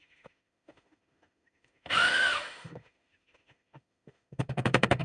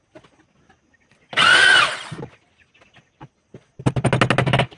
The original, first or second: second